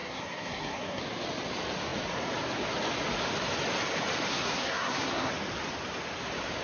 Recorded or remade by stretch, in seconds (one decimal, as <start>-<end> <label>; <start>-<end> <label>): 0.0-1.0 remade; 1.0-4.3 recorded; 4.3-5.3 remade; 5.3-6.6 recorded